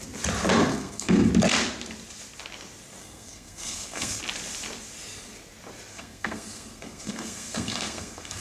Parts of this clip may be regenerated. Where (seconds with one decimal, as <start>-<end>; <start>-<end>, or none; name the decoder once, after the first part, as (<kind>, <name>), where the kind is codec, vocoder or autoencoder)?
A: 0.7-1.3 (codec, SNAC); 3.0-4.2; 5.9-8.4